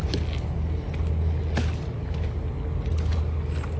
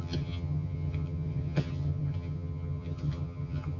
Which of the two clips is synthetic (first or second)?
second